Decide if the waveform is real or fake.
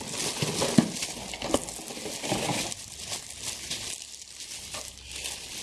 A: real